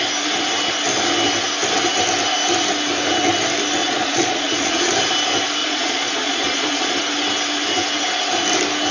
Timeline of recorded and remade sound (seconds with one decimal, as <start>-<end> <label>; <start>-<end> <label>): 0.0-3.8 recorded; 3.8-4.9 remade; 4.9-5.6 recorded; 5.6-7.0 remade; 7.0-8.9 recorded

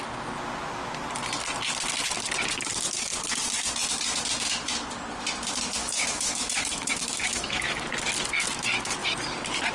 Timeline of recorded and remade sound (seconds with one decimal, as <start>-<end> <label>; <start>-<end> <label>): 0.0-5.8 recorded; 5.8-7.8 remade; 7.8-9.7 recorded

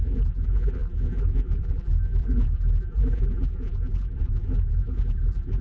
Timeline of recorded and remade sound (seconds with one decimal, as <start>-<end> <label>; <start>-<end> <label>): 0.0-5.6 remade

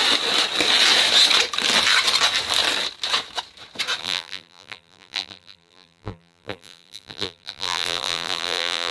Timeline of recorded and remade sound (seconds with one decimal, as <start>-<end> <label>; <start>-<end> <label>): 0.0-4.0 recorded; 4.0-8.9 remade

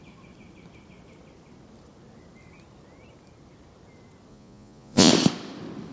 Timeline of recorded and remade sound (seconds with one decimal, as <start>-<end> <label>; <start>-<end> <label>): 0.0-4.3 recorded; 4.3-5.1 remade; 5.1-5.9 recorded

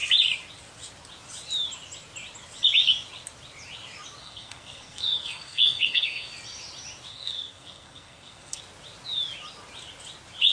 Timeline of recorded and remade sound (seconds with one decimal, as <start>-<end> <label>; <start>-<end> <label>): 0.0-4.2 recorded; 4.2-6.3 remade; 6.3-7.1 recorded; 7.1-8.6 remade; 8.6-10.5 recorded